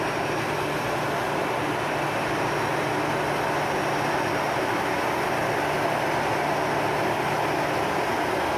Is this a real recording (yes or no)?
yes